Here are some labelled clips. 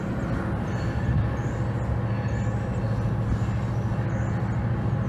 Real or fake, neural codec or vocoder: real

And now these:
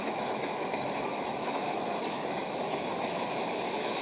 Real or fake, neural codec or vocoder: fake, autoencoder, DAC-VAE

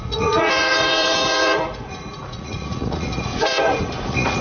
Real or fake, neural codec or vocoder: fake, vocoder, Vocos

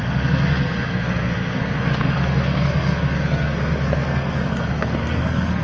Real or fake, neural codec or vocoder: fake, codec, SNAC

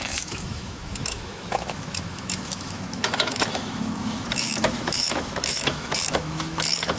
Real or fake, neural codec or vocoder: fake, autoencoder, DAC-VAE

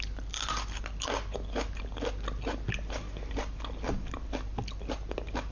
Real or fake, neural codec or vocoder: real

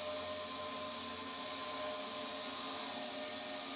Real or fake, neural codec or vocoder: real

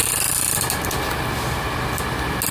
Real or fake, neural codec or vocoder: real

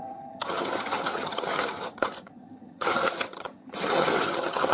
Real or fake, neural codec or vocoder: fake, vocoder, HiFi-GAN